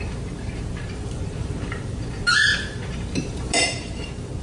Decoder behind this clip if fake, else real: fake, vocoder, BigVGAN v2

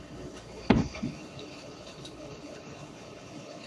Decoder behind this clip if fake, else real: fake, codec, HILCodec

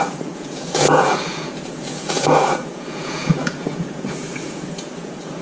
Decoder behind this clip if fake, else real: fake, vocoder, Vocos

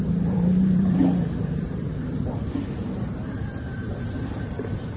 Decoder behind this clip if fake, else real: fake, vocoder, BigVGAN v2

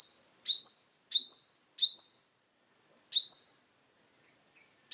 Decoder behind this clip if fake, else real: real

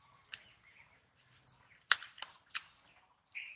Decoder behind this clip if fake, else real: real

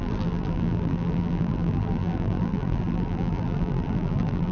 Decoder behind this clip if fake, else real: fake, vocoder, BigVGAN v2